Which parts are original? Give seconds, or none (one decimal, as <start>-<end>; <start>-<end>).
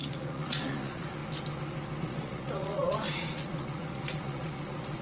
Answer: 1.2-2.0